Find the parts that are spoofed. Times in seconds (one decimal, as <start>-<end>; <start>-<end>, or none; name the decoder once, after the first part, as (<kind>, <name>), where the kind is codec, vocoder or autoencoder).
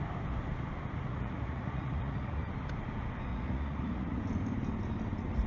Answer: 1.1-2.5 (vocoder, Vocos); 3.3-4.2